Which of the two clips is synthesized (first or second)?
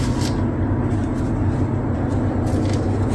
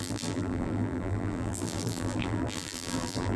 second